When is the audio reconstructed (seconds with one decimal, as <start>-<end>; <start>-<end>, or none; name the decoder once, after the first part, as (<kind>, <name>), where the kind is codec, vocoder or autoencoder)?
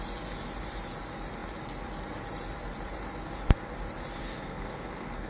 4.2-5.3 (codec, SNAC)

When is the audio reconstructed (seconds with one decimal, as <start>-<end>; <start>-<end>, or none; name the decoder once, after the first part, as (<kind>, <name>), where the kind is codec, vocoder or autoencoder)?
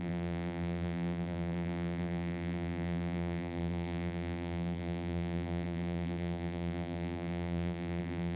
0.0-8.4 (vocoder, BigVGAN v2)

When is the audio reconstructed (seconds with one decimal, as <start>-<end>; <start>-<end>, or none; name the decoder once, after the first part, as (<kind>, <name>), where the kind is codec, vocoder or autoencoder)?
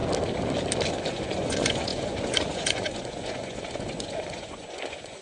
1.1-5.2 (vocoder, Vocos)